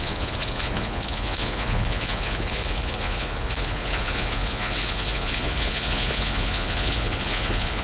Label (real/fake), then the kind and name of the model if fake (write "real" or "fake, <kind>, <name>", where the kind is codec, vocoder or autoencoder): fake, vocoder, Vocos